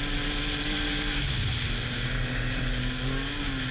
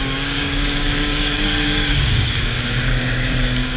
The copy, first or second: second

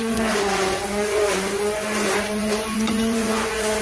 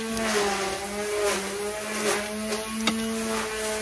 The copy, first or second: first